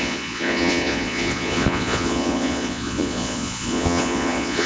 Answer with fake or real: fake